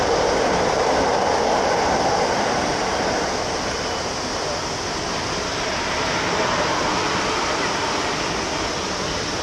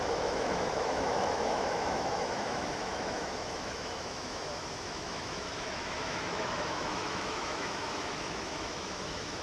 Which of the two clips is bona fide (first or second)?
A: first